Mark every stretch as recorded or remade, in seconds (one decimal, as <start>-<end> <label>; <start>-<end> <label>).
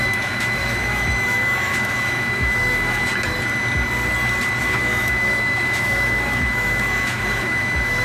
0.0-3.1 remade; 3.1-4.6 recorded; 4.6-8.0 remade